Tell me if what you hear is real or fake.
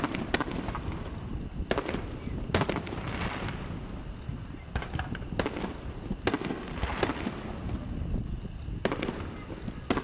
real